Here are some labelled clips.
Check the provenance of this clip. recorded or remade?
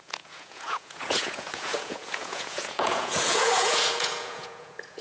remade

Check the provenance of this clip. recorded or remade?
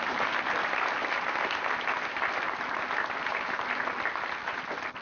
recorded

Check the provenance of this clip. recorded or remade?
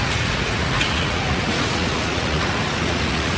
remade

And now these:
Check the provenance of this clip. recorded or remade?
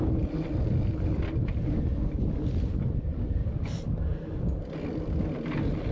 recorded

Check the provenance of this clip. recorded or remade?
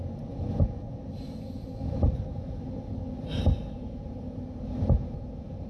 recorded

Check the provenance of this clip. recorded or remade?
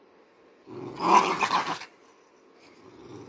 recorded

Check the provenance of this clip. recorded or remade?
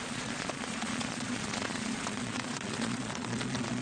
remade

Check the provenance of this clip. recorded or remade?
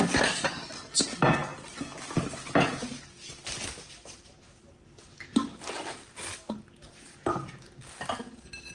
recorded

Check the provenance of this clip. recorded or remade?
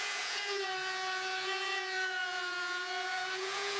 remade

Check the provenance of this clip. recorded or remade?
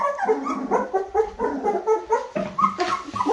recorded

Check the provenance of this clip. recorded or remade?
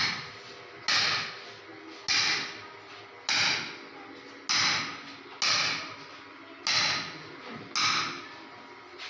recorded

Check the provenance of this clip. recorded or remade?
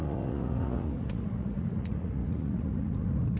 remade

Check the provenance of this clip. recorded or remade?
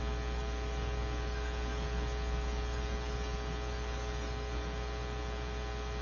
recorded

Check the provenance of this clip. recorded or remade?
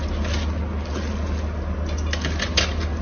recorded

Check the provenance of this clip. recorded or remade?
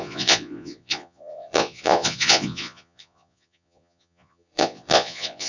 remade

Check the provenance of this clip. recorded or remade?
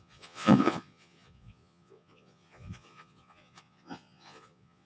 remade